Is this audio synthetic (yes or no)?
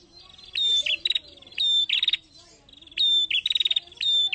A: no